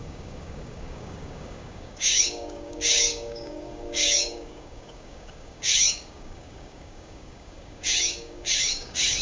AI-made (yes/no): yes